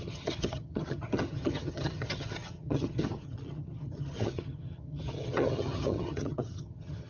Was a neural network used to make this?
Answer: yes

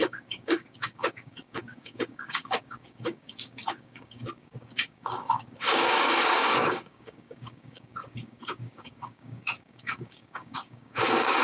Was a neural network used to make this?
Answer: yes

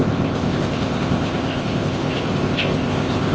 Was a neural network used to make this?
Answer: yes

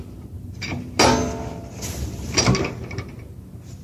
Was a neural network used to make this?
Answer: no